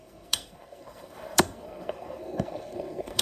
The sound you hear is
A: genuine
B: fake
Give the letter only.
B